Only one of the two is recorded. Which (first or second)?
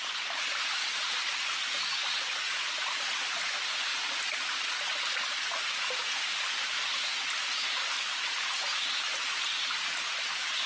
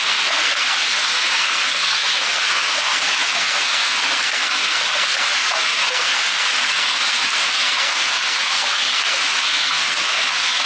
first